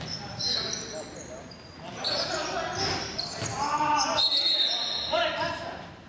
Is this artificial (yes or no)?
no